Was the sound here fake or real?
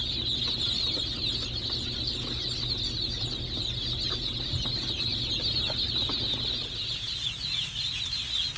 real